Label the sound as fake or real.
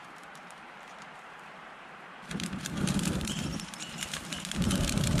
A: fake